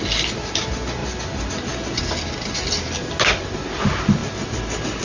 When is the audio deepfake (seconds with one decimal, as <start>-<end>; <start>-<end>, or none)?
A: none